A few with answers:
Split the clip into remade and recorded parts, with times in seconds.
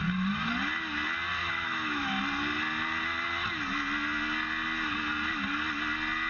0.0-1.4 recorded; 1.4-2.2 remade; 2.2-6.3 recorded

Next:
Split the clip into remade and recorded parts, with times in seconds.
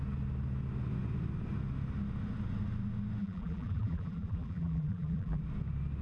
0.0-3.2 recorded; 3.2-5.4 remade; 5.4-6.0 recorded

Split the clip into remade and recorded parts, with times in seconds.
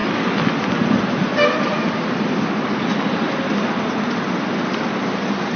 0.0-5.6 recorded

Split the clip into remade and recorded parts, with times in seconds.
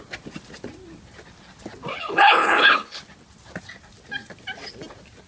0.0-1.9 recorded; 1.9-3.0 remade; 3.0-5.3 recorded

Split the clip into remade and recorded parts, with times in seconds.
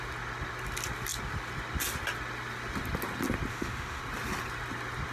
0.0-3.5 recorded; 3.5-4.0 remade; 4.0-5.1 recorded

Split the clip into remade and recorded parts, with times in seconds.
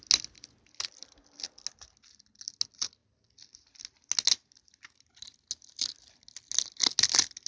0.0-7.5 recorded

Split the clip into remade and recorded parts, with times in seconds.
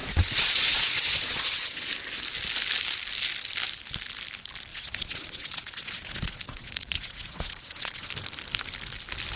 0.0-1.9 remade; 1.9-4.7 recorded; 4.7-8.1 remade; 8.1-9.4 recorded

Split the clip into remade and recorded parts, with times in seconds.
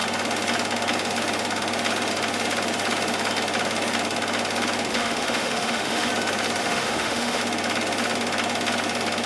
0.0-4.9 recorded; 4.9-6.1 remade; 6.1-6.6 recorded; 6.6-7.4 remade; 7.4-9.3 recorded